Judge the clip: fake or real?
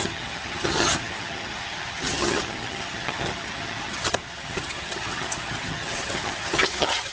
fake